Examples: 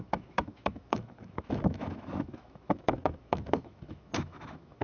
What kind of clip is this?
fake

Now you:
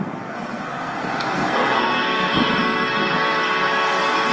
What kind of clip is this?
fake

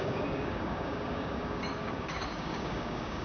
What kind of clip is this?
fake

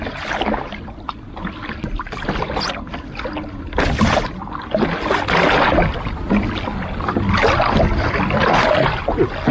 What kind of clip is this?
real